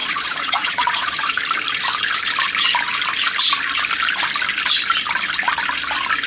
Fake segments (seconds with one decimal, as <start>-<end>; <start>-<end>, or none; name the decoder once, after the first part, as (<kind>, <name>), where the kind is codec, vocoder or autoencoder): 0.0-1.4 (vocoder, Vocos)